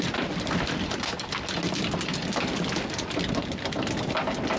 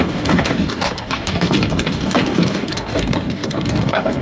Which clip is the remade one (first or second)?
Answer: second